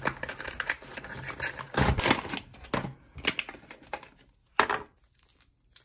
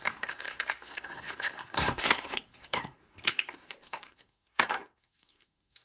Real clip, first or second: first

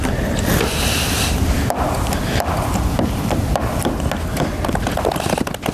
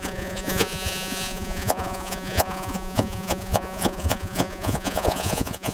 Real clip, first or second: first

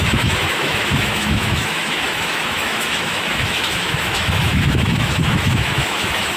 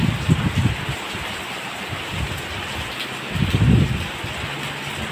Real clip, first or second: second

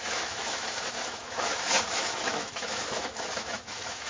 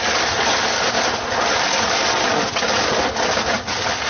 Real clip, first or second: second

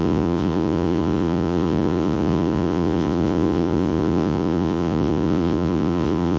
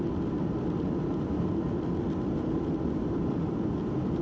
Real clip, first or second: second